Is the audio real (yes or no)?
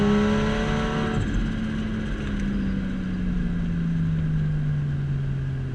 yes